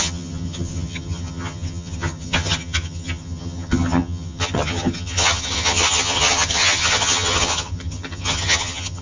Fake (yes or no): yes